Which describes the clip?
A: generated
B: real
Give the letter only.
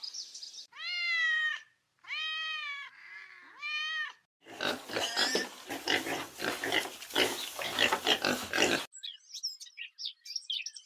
B